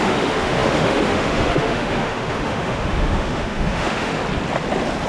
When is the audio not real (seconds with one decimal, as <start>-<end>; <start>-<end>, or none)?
0.0-4.2